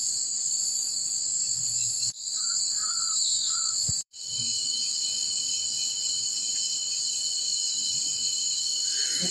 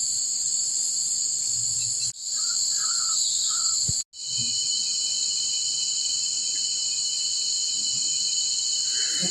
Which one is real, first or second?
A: second